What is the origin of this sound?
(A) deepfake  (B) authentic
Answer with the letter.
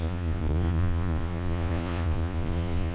A